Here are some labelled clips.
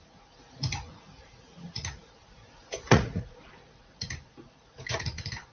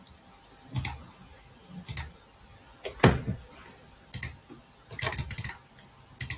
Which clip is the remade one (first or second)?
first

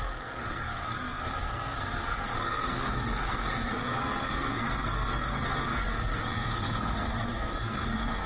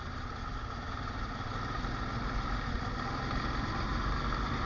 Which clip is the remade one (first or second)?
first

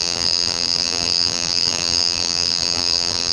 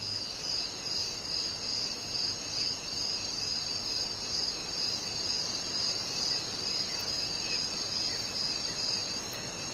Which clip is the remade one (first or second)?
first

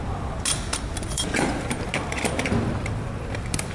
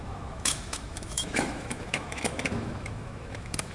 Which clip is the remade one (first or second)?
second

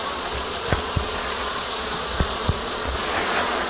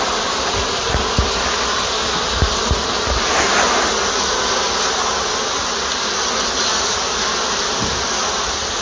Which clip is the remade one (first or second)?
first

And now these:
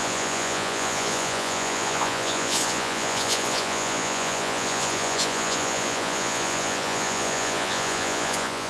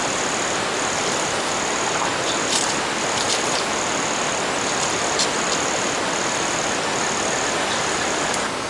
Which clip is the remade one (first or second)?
first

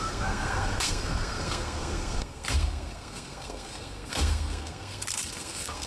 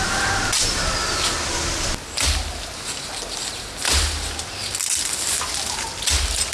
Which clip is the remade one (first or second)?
first